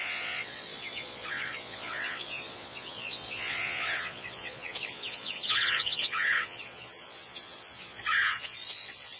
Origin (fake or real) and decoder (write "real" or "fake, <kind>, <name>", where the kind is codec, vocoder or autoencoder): fake, vocoder, Vocos